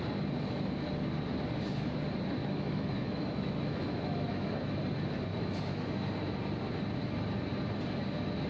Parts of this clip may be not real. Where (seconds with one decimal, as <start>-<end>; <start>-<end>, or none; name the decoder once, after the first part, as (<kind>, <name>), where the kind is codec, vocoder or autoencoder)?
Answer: 2.4-4.5 (autoencoder, DAC-VAE); 5.3-5.9